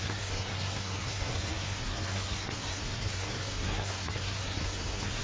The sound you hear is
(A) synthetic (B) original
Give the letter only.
A